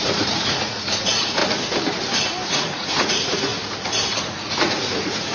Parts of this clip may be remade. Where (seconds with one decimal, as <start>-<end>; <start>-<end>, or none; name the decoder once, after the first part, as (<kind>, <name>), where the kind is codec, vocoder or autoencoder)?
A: 0.0-1.4 (vocoder, Vocos); 2.5-3.5; 4.2-5.3